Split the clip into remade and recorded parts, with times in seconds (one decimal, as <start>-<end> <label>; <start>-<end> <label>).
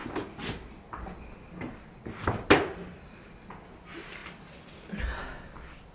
0.0-5.9 recorded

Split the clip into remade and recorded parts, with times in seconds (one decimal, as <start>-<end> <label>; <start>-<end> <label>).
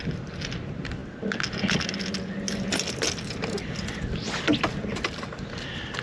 0.0-1.0 remade; 1.0-4.6 recorded; 4.6-6.0 remade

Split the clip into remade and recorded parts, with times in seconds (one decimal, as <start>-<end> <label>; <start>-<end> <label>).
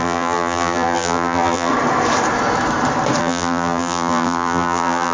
0.0-1.7 remade; 1.7-3.2 recorded; 3.2-5.1 remade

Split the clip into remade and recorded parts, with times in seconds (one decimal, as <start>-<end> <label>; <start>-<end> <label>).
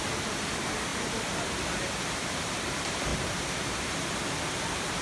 0.0-0.9 recorded; 0.9-1.5 remade; 1.5-3.1 recorded; 3.1-4.2 remade; 4.2-5.0 recorded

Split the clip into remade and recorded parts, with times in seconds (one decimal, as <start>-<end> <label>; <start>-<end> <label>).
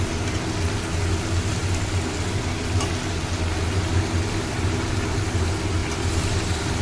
0.0-5.8 recorded; 5.8-6.8 remade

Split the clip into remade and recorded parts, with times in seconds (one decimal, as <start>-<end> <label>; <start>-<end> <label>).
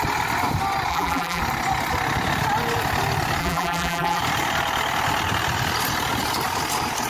0.0-0.9 recorded; 0.9-1.4 remade; 1.4-3.4 recorded; 3.4-4.2 remade; 4.2-7.1 recorded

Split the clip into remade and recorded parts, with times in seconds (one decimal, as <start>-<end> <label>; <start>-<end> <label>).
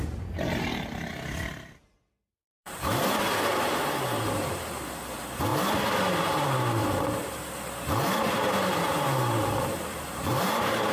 0.0-1.1 remade; 1.1-2.1 recorded; 2.1-5.5 remade; 5.5-6.2 recorded; 6.2-10.9 remade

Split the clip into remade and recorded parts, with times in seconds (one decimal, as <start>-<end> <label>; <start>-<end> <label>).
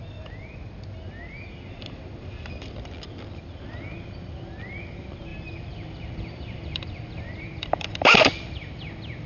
0.0-5.3 recorded; 5.3-8.9 remade; 8.9-9.3 recorded